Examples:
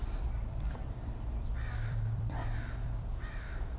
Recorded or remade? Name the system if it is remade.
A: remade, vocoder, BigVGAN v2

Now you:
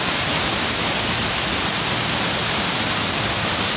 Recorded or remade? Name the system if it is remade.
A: recorded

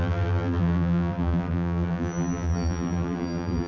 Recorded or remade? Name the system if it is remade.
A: remade, vocoder, BigVGAN v2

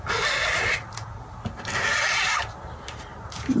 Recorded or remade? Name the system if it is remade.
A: recorded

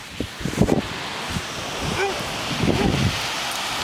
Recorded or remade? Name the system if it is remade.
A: recorded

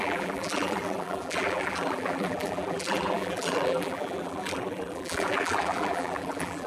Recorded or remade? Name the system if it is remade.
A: remade, vocoder, BigVGAN v2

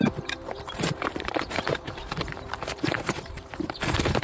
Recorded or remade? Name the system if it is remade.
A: remade, vocoder, BigVGAN v2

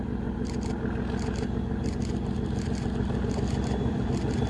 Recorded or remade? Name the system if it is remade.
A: recorded